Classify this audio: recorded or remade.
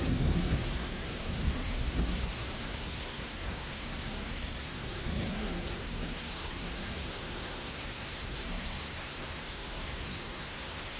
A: remade